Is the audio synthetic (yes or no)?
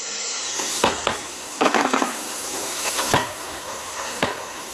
yes